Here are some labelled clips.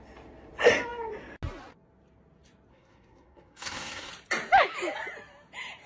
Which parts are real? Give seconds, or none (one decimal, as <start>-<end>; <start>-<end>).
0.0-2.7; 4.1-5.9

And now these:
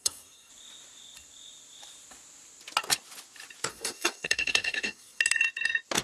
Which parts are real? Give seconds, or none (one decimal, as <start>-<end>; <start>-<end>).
0.5-3.7; 5.2-6.0

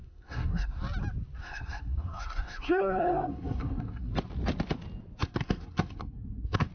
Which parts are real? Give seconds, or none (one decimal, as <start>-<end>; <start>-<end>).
0.8-1.4; 4.1-5.2

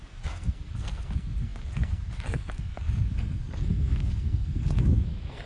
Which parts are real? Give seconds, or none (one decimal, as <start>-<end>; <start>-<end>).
none

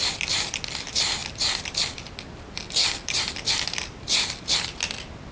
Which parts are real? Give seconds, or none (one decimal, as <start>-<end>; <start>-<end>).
0.0-5.3

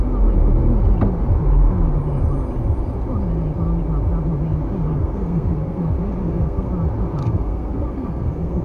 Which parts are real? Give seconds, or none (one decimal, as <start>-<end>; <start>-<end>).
0.0-4.9; 5.8-6.2; 6.7-7.2